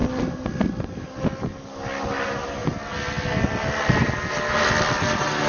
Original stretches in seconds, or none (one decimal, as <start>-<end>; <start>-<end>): 0.0-5.5